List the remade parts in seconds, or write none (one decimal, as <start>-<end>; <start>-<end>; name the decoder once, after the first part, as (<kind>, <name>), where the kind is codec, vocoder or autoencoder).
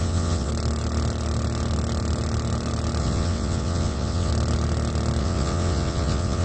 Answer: 0.0-0.5 (vocoder, WaveNeXt); 3.0-4.3; 5.2-6.4